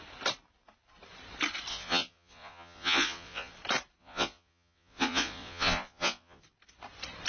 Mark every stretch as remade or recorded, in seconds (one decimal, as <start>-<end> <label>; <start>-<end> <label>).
0.0-1.7 recorded; 1.7-3.5 remade; 3.5-4.0 recorded; 4.0-6.4 remade; 6.4-7.3 recorded